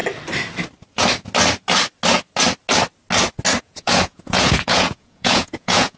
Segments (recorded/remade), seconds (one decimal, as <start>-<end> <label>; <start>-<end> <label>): 0.0-3.6 recorded; 3.6-6.0 remade